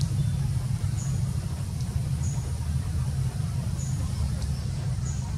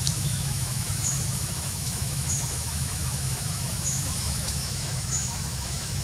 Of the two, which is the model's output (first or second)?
second